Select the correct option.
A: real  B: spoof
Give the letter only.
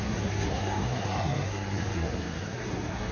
B